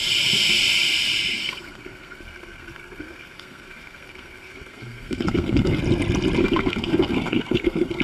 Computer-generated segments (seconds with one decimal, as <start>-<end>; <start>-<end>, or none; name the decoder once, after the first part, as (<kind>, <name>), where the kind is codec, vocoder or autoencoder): 1.4-5.8 (codec, SNAC); 6.4-8.0